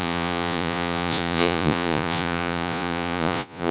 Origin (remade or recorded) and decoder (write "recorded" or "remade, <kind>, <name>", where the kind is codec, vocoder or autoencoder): remade, vocoder, Vocos